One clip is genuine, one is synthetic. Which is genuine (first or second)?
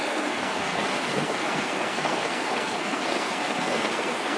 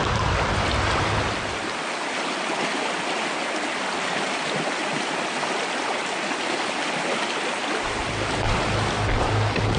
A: second